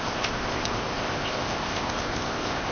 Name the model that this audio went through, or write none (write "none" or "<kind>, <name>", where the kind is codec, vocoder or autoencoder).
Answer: codec, ZipCodec